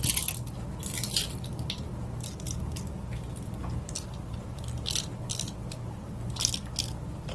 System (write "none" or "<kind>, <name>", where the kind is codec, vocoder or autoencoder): none